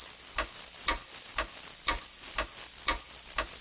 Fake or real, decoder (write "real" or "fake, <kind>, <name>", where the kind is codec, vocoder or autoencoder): real